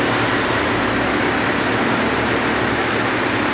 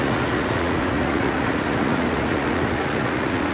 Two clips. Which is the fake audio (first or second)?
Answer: second